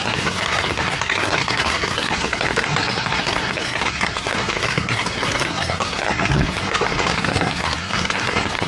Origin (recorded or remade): remade